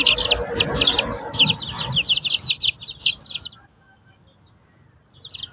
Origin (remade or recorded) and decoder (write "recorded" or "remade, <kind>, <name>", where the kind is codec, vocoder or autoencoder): recorded